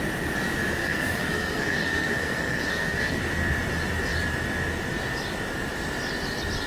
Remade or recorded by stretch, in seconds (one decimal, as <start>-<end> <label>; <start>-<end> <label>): 0.0-0.8 recorded; 0.8-3.2 remade; 3.2-6.7 recorded